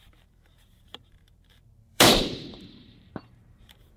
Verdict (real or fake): fake